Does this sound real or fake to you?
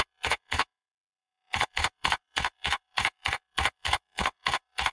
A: fake